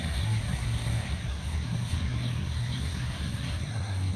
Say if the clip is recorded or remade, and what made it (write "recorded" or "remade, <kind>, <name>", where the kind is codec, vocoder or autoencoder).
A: remade, codec, SNAC